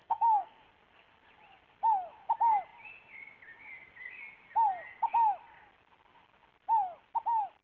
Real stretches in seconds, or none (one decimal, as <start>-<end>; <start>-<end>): 0.6-7.6